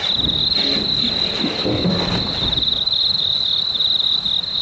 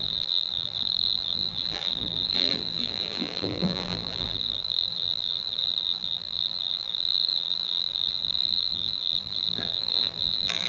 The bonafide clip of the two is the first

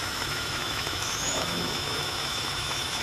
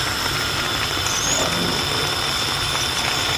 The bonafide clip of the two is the second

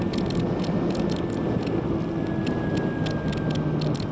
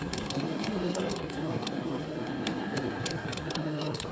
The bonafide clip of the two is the first